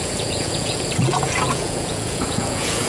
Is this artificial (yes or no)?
yes